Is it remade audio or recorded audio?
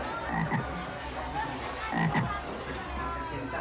recorded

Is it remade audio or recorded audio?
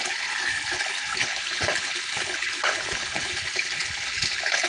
remade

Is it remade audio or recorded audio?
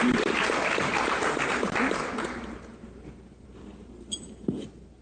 recorded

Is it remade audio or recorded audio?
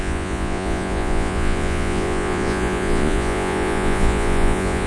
remade